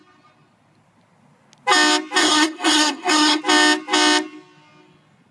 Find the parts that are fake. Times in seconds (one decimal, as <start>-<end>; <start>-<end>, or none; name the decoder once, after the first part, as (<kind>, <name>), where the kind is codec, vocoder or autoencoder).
2.2-3.4 (codec, SNAC)